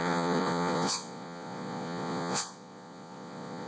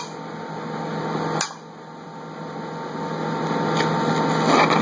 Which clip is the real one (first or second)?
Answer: second